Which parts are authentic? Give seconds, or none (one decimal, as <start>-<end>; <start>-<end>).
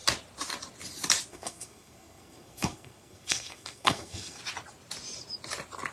0.0-1.3; 4.4-5.9